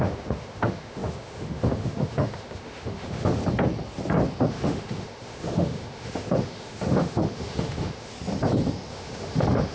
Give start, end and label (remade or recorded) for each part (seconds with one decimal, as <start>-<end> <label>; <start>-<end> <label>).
0.0-3.4 remade; 3.4-4.5 recorded; 4.5-8.1 remade; 8.1-8.9 recorded; 8.9-9.7 remade